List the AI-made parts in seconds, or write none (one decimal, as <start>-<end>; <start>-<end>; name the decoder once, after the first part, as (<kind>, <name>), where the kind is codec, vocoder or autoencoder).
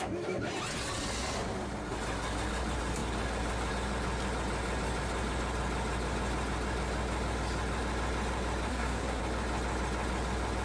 8.7-9.2 (codec, SNAC)